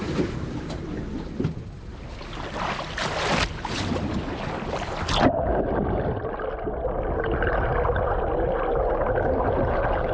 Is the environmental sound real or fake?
real